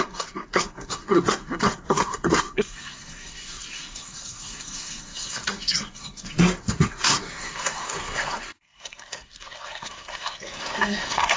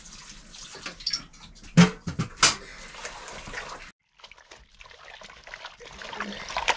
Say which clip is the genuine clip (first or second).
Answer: second